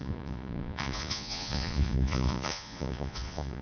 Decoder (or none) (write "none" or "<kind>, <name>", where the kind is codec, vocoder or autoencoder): vocoder, Vocos